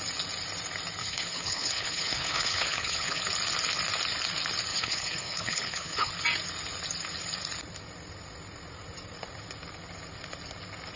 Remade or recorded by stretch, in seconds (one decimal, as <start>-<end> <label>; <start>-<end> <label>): 0.0-1.0 recorded; 1.0-3.2 remade; 3.2-4.7 recorded; 4.7-6.1 remade; 6.1-11.0 recorded